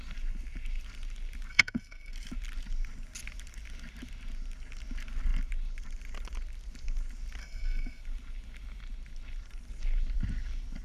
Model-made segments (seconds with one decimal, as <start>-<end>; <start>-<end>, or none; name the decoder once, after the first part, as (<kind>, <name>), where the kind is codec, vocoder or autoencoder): 1.5-2.1 (codec, SNAC); 7.4-8.0